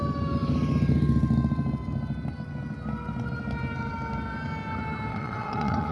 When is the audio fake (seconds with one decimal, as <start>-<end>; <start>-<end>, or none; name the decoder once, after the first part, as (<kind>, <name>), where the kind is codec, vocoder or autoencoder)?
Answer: 5.1-5.9 (vocoder, WaveNeXt)